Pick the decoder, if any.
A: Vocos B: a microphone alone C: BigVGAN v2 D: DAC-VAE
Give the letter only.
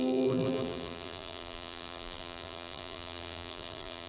C